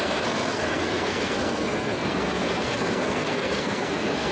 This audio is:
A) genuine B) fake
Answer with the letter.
B